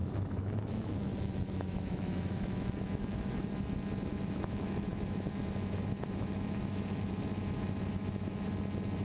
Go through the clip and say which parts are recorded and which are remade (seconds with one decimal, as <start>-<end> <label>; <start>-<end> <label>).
0.0-3.5 remade; 3.5-4.1 recorded; 4.1-8.5 remade; 8.5-9.0 recorded